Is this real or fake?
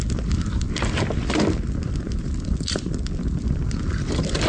real